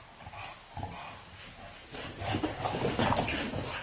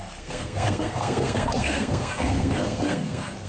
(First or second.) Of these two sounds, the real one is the first